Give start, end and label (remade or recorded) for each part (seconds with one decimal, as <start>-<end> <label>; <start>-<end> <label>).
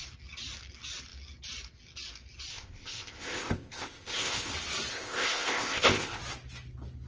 0.0-2.5 recorded; 2.5-4.5 remade; 4.5-4.9 recorded; 4.9-6.2 remade; 6.2-7.1 recorded